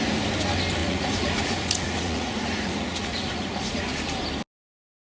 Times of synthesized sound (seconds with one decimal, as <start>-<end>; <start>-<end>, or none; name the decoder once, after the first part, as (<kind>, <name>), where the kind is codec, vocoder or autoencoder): 0.8-3.9 (vocoder, Vocos)